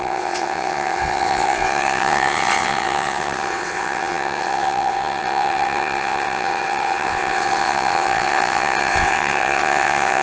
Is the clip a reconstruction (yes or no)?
yes